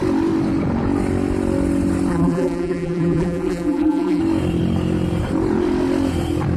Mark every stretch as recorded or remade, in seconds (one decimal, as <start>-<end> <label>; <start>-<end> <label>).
0.0-2.1 recorded; 2.1-4.2 remade; 4.2-6.6 recorded